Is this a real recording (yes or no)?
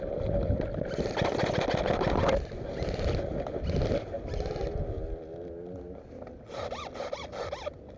yes